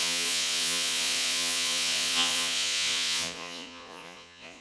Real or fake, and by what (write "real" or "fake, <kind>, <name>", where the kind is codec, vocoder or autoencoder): fake, vocoder, Vocos